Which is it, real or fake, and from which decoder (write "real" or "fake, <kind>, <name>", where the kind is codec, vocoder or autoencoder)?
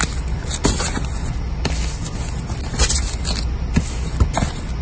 real